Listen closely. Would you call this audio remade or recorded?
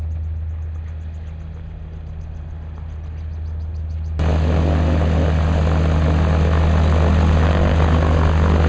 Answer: recorded